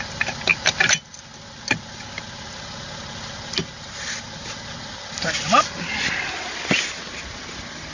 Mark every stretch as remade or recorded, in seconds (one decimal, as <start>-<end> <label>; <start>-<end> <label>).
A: 0.0-7.9 recorded

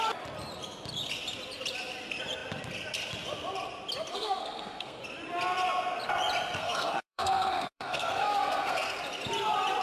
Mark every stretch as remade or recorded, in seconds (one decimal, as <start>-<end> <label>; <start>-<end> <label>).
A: 0.0-4.1 recorded; 4.1-5.0 remade; 5.0-6.6 recorded; 6.6-9.0 remade; 9.0-9.8 recorded

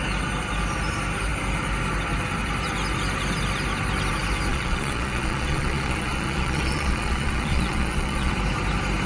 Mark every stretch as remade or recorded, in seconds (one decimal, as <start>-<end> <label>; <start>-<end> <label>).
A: 0.0-4.5 recorded; 4.5-8.3 remade; 8.3-9.1 recorded